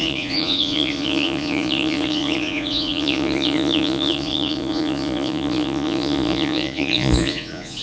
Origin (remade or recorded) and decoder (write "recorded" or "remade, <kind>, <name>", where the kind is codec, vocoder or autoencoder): remade, vocoder, Vocos